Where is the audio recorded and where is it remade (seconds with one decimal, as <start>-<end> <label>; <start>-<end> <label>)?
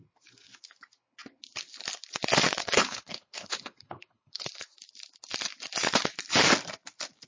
0.0-2.6 recorded; 2.6-4.8 remade; 4.8-7.3 recorded